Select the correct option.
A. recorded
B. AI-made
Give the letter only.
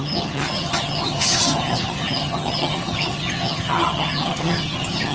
B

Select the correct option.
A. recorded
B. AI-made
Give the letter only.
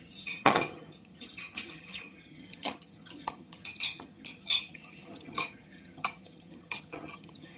B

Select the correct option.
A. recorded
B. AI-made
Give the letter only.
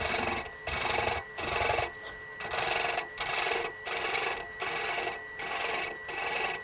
A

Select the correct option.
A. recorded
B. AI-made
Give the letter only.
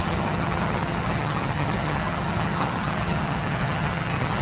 B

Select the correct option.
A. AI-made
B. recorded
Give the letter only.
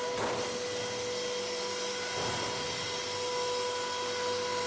B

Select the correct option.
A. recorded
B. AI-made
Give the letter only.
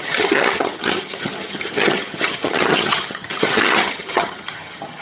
B